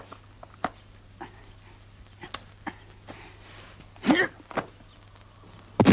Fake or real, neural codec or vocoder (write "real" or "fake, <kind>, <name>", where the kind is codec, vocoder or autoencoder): real